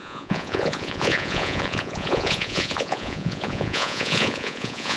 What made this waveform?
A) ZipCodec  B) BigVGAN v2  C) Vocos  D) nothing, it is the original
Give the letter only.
C